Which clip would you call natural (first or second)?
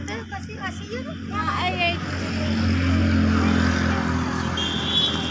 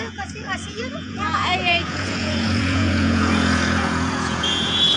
first